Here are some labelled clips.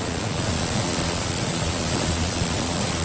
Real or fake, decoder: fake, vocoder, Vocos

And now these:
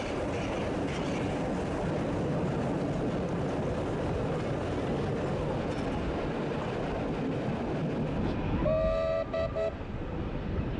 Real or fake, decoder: real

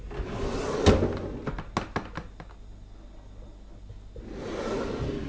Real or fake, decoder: real